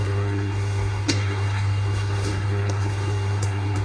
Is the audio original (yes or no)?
no